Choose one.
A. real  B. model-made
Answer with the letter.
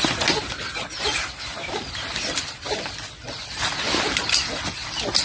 A